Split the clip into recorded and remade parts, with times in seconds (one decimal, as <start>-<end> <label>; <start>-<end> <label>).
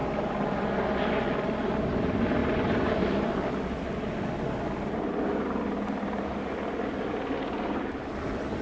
0.0-8.6 recorded